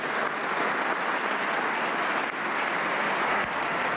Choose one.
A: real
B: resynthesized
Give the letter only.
A